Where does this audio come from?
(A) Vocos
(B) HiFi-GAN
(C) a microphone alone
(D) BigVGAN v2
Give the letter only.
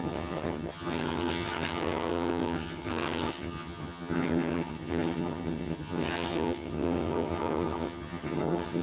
B